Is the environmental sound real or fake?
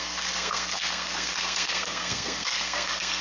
fake